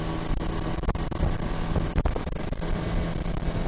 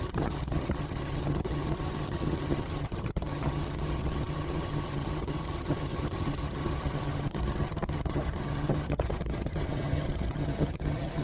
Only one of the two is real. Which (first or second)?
first